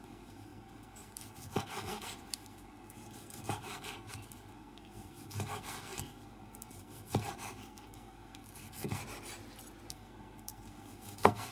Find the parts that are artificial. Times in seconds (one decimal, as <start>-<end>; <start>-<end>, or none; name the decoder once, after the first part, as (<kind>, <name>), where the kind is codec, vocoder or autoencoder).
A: 0.0-9.0 (codec, SNAC); 9.9-11.5